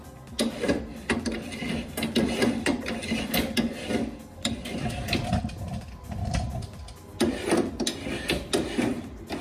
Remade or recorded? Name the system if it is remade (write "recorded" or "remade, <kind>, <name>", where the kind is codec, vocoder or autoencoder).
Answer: recorded